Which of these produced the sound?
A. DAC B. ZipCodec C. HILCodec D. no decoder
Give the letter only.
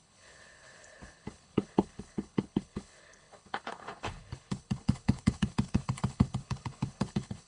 C